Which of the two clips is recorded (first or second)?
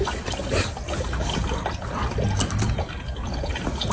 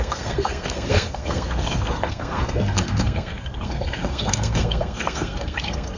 first